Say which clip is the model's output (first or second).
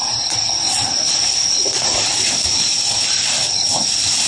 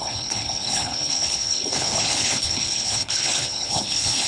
second